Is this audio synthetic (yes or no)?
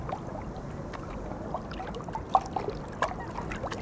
no